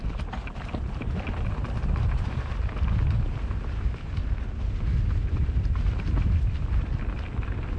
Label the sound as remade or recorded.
recorded